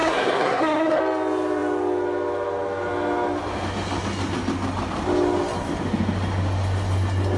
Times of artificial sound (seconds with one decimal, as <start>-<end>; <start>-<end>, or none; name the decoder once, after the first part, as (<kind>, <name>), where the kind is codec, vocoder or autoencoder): 0.0-1.0 (codec, SNAC)